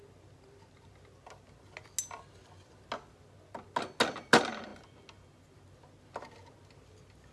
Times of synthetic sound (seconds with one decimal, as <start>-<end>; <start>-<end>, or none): none

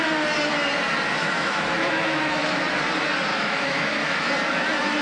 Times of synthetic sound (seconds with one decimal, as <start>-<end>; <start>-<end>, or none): 1.2-2.6; 3.3-4.3